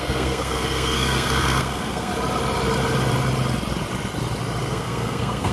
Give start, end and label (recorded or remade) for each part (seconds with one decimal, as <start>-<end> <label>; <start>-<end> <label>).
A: 0.0-2.1 remade; 2.1-4.7 recorded; 4.7-5.5 remade